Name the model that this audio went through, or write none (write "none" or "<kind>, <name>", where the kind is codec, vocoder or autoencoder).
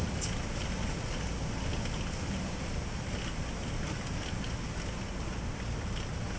none